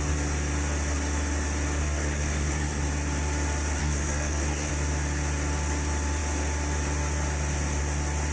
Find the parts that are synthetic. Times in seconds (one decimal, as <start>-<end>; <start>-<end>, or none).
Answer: 1.8-2.8; 3.8-4.7